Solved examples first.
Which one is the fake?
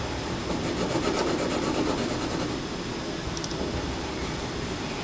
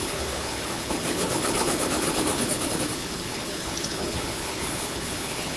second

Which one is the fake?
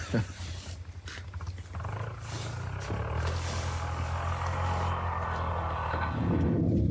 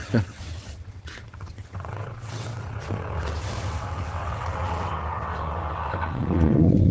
second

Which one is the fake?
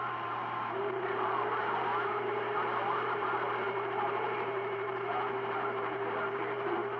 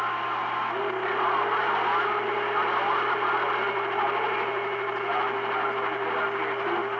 first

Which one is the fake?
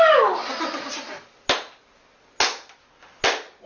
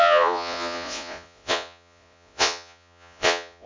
second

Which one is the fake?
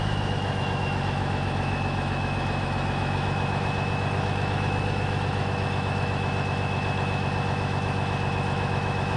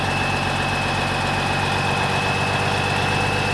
first